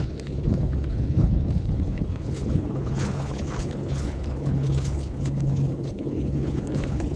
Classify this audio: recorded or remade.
remade